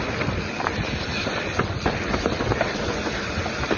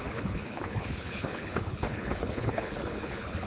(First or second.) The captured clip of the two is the first